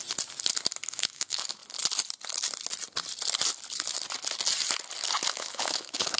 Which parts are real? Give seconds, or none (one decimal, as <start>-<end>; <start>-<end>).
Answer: 0.0-0.9; 1.6-5.3